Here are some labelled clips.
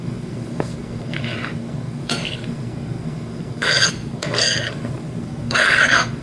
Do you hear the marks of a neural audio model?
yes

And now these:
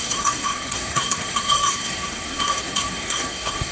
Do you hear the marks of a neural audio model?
yes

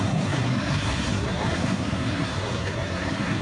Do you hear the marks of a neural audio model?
yes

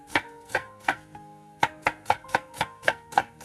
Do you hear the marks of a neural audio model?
yes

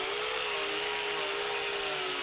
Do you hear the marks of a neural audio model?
no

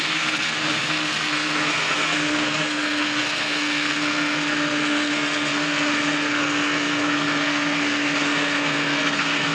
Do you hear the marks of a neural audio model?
yes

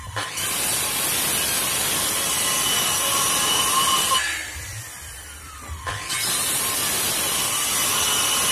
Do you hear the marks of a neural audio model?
no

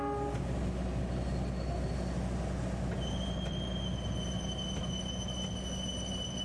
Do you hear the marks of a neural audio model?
no